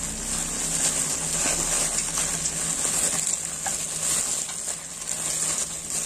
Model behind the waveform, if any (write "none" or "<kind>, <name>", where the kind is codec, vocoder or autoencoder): none